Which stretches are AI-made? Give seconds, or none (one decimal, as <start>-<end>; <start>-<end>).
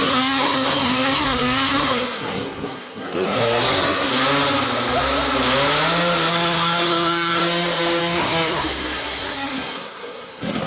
0.0-4.1; 6.3-7.4; 8.0-10.7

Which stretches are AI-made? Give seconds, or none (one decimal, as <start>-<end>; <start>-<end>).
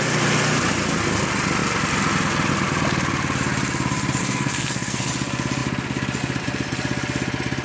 4.2-5.1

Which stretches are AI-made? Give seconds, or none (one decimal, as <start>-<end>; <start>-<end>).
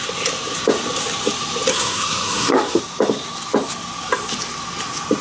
1.7-2.8